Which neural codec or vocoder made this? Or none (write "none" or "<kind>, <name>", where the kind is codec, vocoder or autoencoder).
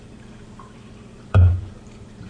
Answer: vocoder, BigVGAN v2